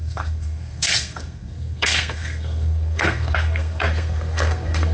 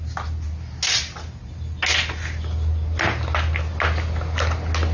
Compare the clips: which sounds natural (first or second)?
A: second